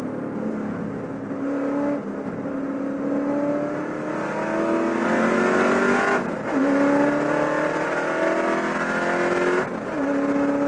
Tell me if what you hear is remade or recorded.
recorded